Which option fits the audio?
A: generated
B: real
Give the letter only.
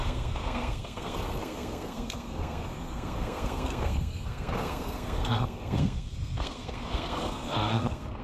A